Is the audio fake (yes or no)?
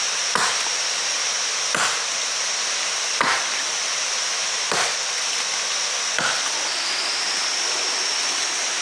no